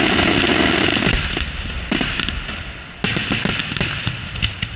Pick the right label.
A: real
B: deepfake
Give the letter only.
A